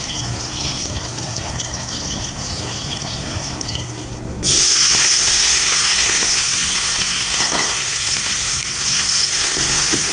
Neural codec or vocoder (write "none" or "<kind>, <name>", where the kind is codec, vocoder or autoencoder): codec, SNAC